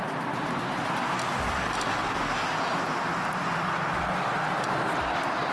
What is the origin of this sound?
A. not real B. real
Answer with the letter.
B